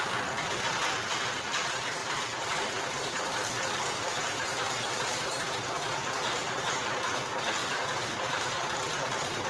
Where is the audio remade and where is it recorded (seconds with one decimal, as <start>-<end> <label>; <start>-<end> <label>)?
0.0-2.0 recorded; 2.0-6.7 remade; 6.7-7.6 recorded; 7.6-8.5 remade; 8.5-8.9 recorded; 8.9-9.5 remade